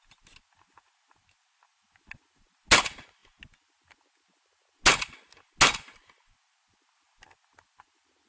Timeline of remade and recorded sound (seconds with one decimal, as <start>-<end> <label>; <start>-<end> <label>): 0.0-8.3 recorded